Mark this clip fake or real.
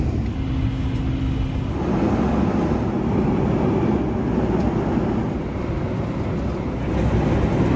real